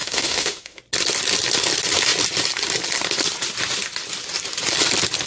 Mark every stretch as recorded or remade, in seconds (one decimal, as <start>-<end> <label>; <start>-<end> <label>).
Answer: 0.0-0.8 remade; 0.8-5.3 recorded